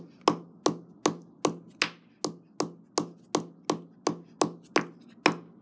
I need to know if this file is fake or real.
real